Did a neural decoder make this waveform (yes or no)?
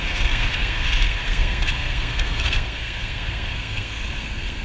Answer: yes